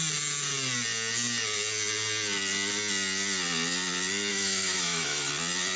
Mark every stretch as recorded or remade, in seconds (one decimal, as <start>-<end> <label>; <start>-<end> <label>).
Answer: 0.0-4.3 recorded; 4.3-5.3 remade; 5.3-5.8 recorded

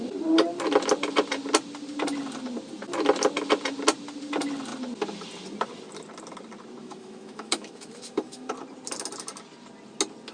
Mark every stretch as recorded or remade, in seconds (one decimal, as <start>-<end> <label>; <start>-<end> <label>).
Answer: 0.0-6.8 recorded; 6.8-8.5 remade; 8.5-10.3 recorded

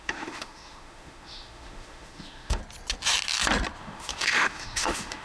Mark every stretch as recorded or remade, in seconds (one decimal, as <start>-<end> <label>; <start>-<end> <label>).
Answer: 0.0-2.6 remade; 2.6-3.8 recorded; 3.8-5.2 remade

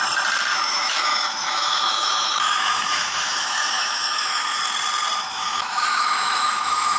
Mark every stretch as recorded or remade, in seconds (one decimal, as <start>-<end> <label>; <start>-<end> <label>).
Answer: 0.0-0.5 recorded; 0.5-4.6 remade; 4.6-5.2 recorded; 5.2-7.0 remade

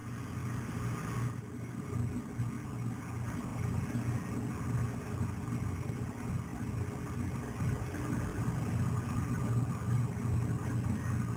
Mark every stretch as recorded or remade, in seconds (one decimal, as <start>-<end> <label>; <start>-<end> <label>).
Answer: 0.0-11.4 recorded

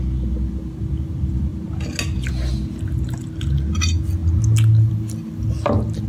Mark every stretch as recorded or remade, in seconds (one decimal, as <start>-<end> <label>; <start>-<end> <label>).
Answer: 0.0-6.1 recorded

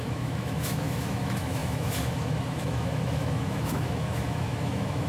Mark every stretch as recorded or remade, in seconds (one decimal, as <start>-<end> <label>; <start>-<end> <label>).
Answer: 0.0-5.1 remade

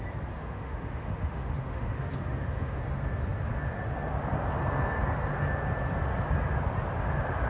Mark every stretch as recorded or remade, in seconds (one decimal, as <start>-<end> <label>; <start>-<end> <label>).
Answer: 0.0-0.4 recorded; 0.4-2.8 remade; 2.8-7.5 recorded